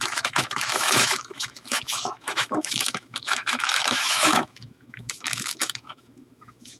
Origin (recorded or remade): remade